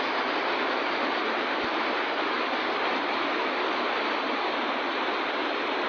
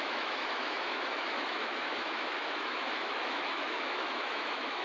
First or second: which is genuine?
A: first